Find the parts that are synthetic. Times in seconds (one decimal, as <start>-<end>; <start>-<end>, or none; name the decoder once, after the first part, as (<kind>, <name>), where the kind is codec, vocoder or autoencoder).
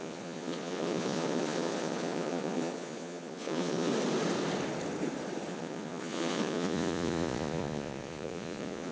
0.0-3.9 (vocoder, Vocos); 5.5-8.9